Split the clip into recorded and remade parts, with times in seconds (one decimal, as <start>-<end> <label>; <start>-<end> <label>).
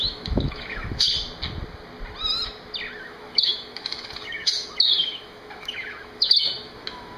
0.0-1.1 remade; 1.1-3.0 recorded; 3.0-7.2 remade